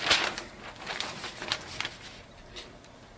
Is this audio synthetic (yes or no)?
no